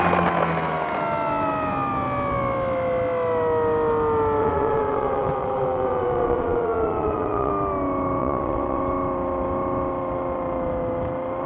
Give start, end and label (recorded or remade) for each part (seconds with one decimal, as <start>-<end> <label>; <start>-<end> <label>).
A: 0.0-4.4 recorded; 4.4-7.5 remade; 7.5-8.2 recorded; 8.2-8.8 remade; 8.8-11.5 recorded